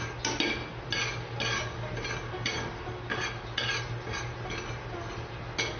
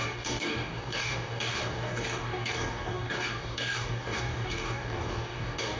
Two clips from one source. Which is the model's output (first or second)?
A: second